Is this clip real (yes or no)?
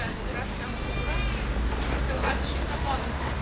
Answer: yes